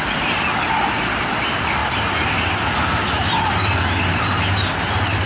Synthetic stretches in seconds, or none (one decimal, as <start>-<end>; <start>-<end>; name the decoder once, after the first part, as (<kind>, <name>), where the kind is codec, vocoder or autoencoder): none